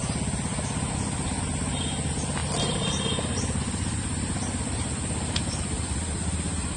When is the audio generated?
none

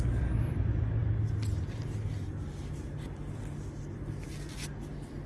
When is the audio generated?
none

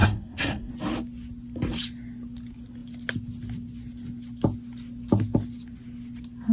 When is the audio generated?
0.0-0.7 (codec, SNAC)

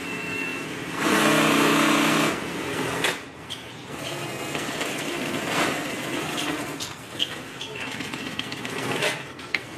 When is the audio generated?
0.0-9.8 (codec, SNAC)

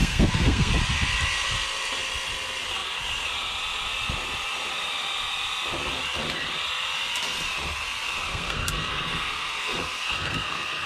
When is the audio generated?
0.0-0.7 (codec, SNAC); 8.3-10.9